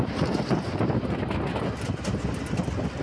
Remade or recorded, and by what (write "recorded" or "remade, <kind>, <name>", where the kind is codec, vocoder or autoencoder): recorded